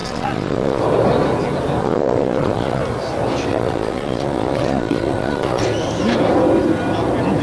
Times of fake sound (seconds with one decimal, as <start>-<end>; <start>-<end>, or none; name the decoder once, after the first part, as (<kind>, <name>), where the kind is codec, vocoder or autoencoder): 0.0-0.8 (vocoder, Vocos); 1.8-2.8; 3.5-5.6